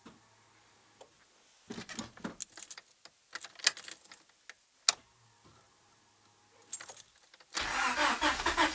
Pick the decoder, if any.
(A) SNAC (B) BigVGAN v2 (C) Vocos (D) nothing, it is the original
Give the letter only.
D